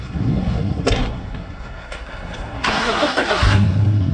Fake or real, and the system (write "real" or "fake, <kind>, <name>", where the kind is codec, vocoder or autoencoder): fake, codec, SNAC